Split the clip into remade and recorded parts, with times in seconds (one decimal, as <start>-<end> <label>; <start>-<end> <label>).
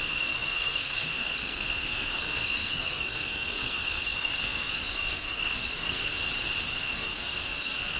0.0-6.1 remade; 6.1-6.7 recorded; 6.7-8.0 remade